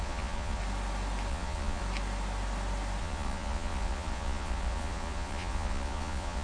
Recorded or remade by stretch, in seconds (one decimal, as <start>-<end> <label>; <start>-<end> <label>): 0.0-0.6 remade; 0.6-1.3 recorded; 1.3-1.8 remade; 1.8-3.0 recorded; 3.0-6.4 remade